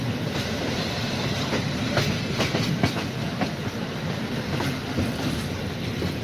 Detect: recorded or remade recorded